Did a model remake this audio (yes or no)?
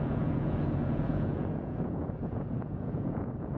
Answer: yes